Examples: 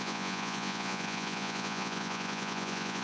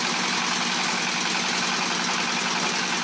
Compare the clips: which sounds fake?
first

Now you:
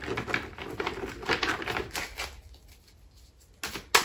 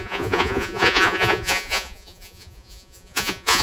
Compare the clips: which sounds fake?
second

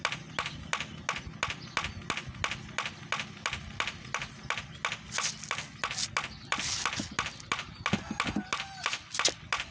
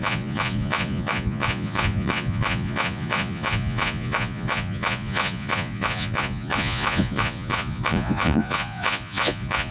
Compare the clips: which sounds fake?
second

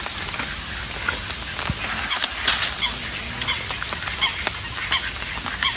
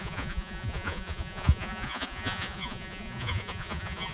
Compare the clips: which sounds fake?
second